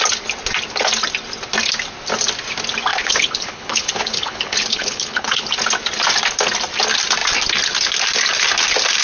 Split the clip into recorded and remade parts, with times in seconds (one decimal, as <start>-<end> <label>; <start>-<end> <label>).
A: 0.0-2.9 recorded; 2.9-5.5 remade; 5.5-9.0 recorded